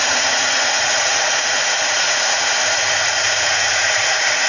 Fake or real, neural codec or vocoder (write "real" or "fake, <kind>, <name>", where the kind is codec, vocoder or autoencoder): fake, vocoder, Vocos